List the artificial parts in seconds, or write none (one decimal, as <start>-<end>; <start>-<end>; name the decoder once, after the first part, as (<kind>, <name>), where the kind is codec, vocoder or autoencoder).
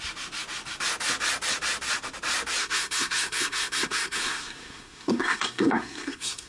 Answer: 2.6-6.5 (codec, SNAC)